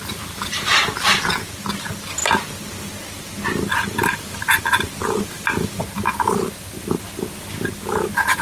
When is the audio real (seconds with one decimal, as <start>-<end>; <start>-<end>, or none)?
0.0-8.4